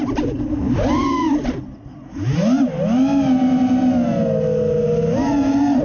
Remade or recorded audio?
recorded